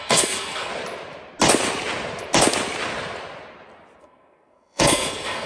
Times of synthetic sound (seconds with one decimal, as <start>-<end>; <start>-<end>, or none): 0.0-0.7; 4.0-5.5